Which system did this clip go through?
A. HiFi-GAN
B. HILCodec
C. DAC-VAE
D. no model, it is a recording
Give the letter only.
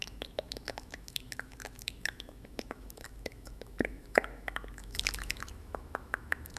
C